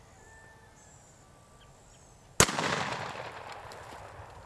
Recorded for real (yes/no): yes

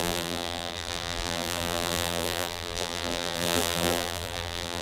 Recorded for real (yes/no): no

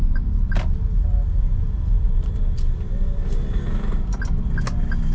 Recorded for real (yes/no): yes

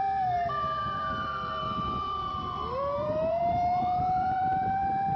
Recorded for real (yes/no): no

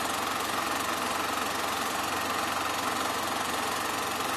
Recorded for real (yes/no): yes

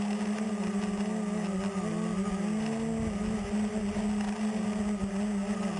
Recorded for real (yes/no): yes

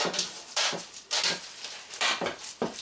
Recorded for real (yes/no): no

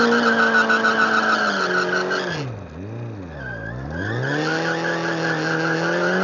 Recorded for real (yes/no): yes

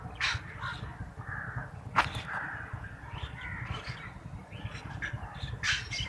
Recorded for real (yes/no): yes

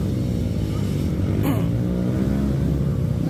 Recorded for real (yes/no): yes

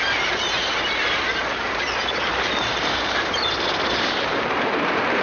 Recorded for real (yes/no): no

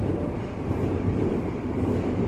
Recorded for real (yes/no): no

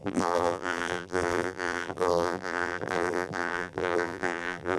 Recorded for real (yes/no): no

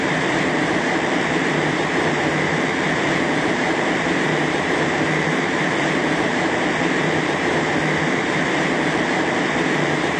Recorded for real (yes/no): no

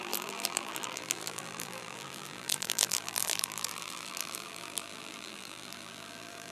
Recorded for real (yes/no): no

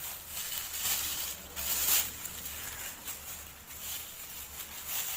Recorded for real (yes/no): yes